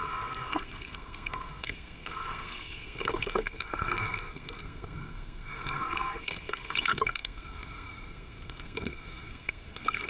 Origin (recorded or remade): remade